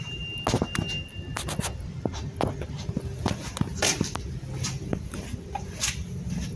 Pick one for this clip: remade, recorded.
recorded